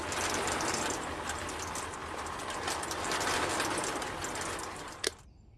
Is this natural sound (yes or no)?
yes